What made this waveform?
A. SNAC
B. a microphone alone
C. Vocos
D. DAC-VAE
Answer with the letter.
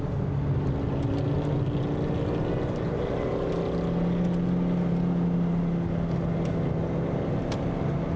B